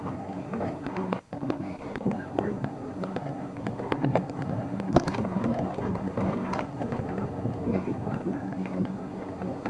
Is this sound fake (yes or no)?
yes